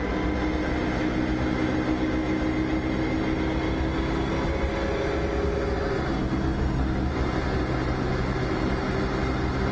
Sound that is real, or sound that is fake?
real